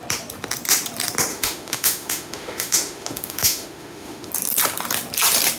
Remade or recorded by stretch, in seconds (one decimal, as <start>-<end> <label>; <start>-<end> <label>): 0.0-1.3 recorded; 1.3-4.3 remade; 4.3-5.6 recorded

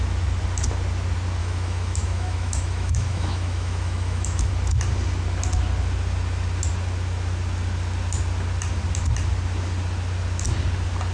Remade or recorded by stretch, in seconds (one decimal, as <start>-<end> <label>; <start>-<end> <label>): 0.0-1.4 recorded; 1.4-4.5 remade; 4.5-11.1 recorded

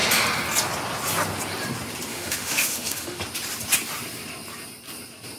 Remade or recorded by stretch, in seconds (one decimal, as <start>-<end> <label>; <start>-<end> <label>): 0.0-2.1 recorded; 2.1-3.2 remade; 3.2-5.4 recorded

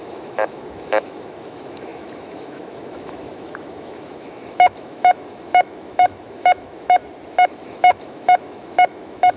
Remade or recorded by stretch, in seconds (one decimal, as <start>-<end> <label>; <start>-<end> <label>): 0.0-7.0 remade; 7.0-7.5 recorded; 7.5-9.4 remade

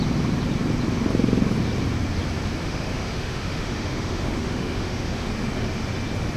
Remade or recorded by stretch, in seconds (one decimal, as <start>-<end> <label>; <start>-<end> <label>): 0.0-2.6 recorded; 2.6-5.3 remade; 5.3-6.4 recorded

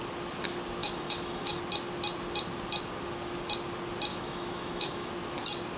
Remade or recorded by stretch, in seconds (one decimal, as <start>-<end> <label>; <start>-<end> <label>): 0.0-0.8 recorded; 0.8-1.6 remade; 1.6-4.1 recorded; 4.1-5.1 remade; 5.1-5.8 recorded